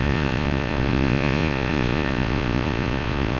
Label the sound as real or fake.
fake